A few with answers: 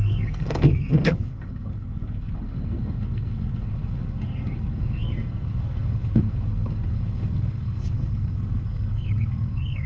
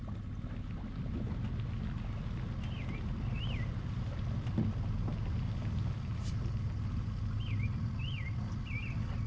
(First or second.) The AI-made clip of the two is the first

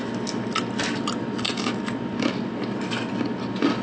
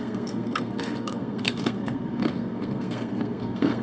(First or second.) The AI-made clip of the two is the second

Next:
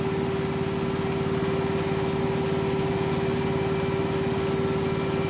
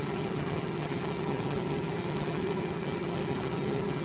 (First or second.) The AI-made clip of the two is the second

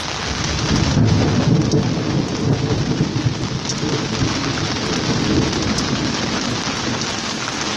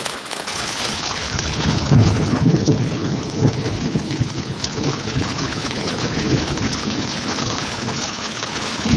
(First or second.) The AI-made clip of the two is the second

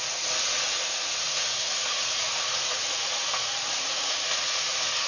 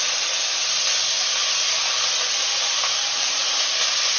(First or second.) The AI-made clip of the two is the first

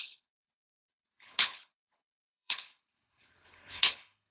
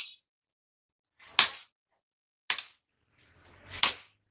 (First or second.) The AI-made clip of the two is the first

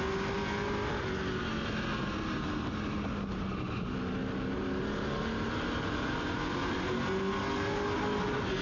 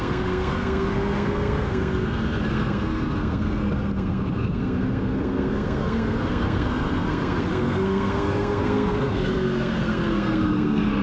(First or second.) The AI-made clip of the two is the second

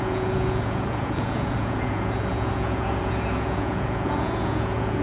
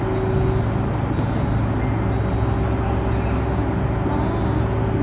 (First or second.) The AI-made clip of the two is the first